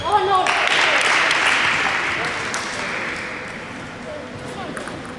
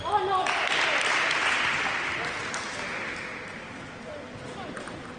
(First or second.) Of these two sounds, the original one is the first